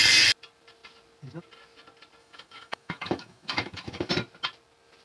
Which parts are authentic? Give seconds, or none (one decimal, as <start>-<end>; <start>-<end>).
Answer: 0.0-2.2; 4.1-5.0